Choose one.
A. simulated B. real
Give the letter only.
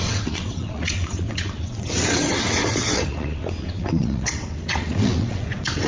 A